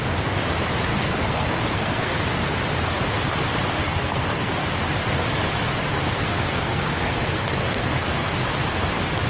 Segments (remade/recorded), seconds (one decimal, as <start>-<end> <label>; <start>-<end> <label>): 0.0-0.9 recorded; 0.9-2.2 remade; 2.2-3.8 recorded; 3.8-4.5 remade; 4.5-6.1 recorded; 6.1-8.3 remade; 8.3-9.3 recorded